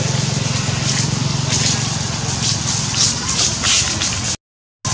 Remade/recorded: recorded